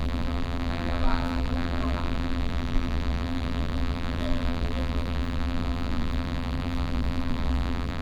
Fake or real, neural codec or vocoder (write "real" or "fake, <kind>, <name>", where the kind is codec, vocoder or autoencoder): fake, vocoder, BigVGAN v2